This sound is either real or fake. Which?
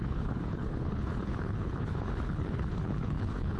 fake